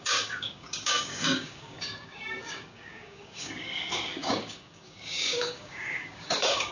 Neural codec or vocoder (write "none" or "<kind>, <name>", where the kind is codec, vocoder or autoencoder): codec, DAC